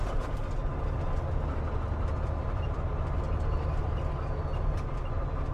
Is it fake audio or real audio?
real